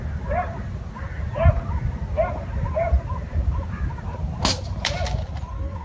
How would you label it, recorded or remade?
recorded